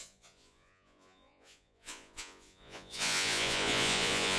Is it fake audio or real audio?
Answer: fake